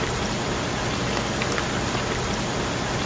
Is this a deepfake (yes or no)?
no